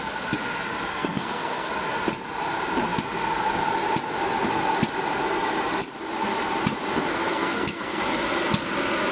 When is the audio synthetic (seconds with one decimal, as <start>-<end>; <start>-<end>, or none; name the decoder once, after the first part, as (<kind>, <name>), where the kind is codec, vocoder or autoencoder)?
0.9-1.7 (codec, SNAC); 7.1-8.0